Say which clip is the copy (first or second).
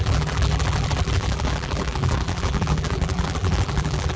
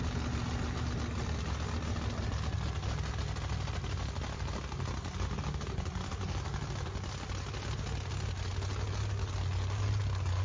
first